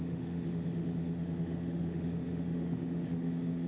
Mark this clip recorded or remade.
remade